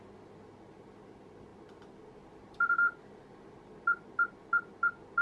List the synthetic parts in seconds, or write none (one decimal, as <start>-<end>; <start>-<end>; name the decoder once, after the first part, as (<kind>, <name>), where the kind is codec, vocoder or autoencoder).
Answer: none